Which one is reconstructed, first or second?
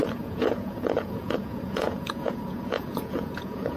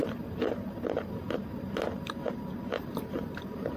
first